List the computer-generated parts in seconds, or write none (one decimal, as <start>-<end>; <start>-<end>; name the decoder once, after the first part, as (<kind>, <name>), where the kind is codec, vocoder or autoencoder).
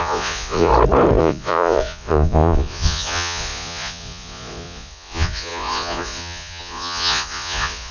0.0-0.7 (vocoder, Vocos); 1.2-7.9